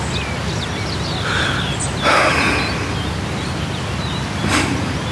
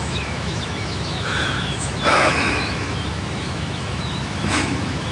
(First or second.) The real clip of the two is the first